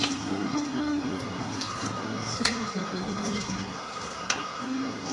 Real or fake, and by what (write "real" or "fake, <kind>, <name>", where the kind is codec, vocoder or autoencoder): fake, codec, SNAC